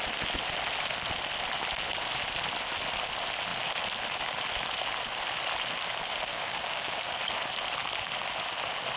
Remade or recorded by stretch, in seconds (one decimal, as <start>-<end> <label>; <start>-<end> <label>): 0.0-6.3 recorded; 6.3-7.2 remade; 7.2-9.0 recorded